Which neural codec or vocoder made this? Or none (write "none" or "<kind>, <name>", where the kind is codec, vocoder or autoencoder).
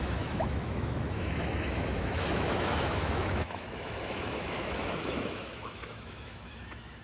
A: autoencoder, DAC-VAE